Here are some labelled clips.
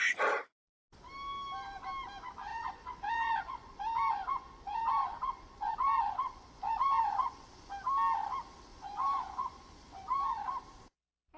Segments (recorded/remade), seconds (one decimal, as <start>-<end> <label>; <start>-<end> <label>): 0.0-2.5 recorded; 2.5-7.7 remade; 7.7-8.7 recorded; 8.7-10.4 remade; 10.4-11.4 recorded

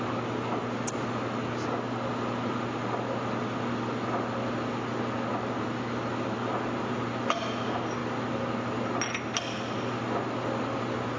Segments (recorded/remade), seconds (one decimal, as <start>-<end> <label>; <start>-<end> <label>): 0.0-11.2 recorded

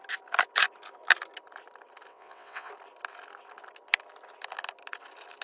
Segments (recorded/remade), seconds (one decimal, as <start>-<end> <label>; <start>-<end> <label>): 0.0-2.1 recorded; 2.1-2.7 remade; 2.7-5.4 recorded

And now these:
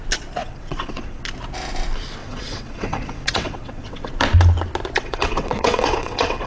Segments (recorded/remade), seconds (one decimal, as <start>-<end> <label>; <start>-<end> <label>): 0.0-0.4 recorded; 0.4-1.2 remade; 1.2-2.2 recorded; 2.2-4.1 remade; 4.1-5.0 recorded; 5.0-6.5 remade

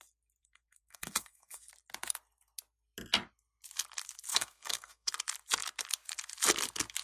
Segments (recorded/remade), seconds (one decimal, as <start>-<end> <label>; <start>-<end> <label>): 0.0-0.4 recorded; 0.4-1.7 remade; 1.7-4.3 recorded; 4.3-5.1 remade; 5.1-7.0 recorded